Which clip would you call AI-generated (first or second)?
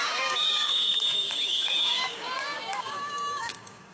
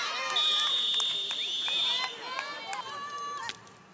first